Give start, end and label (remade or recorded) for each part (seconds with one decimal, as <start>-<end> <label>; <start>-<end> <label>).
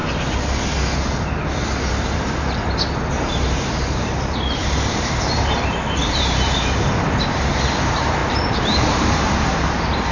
0.0-1.9 recorded; 1.9-10.1 remade